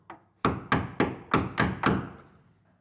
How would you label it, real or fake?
real